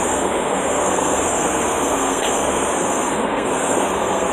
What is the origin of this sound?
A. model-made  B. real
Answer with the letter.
A